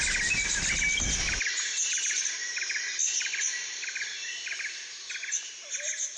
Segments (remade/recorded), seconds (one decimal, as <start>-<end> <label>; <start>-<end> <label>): 0.0-6.2 recorded